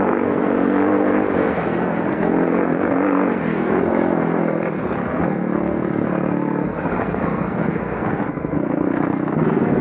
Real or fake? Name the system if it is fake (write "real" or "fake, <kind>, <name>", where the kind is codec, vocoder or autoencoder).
fake, codec, SNAC